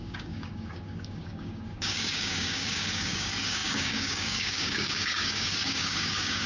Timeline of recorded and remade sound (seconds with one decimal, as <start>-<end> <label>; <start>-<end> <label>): 0.0-6.5 remade